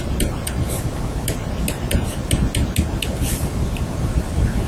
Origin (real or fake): real